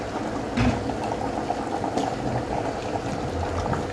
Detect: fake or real real